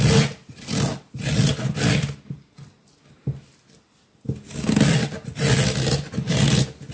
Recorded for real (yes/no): yes